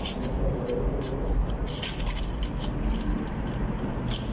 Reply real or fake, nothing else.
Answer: real